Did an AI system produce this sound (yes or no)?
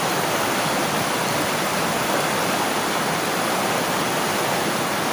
no